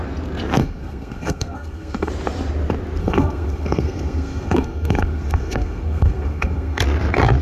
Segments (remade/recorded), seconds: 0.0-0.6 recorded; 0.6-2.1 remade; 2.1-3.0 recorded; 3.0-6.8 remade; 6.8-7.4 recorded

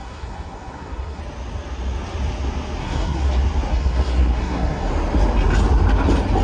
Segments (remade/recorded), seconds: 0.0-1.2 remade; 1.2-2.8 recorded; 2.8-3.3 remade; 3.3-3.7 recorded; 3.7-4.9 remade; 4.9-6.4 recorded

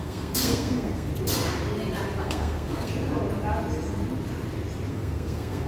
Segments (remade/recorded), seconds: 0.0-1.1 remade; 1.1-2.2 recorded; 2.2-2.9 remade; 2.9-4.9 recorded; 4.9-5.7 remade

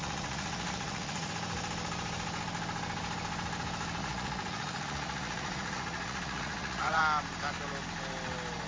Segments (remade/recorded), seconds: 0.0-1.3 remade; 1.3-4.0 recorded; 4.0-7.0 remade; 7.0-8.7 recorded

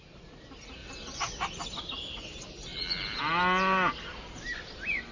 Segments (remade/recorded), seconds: 0.0-2.7 recorded; 2.7-3.2 remade; 3.2-5.1 recorded